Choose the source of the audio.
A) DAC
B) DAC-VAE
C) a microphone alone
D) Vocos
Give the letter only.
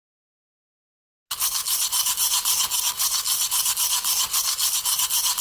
C